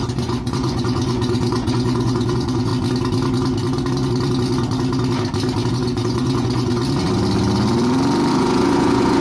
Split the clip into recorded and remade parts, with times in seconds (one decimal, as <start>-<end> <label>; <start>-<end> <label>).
0.0-2.7 remade; 2.7-5.7 recorded; 5.7-6.8 remade; 6.8-8.3 recorded; 8.3-9.2 remade